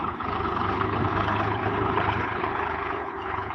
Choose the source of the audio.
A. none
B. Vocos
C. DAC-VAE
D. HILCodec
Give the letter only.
D